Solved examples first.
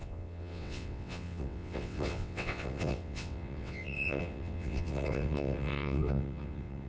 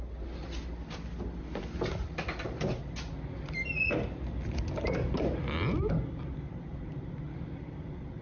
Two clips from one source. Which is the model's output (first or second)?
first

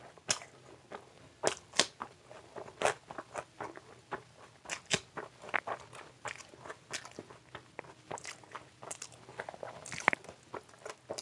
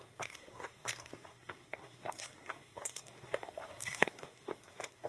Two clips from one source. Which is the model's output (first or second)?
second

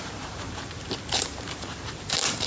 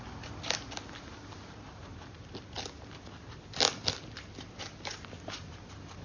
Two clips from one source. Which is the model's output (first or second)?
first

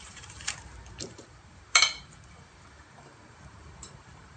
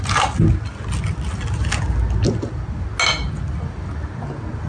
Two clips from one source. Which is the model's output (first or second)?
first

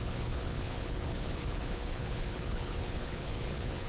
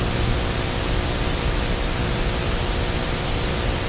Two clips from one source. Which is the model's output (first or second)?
first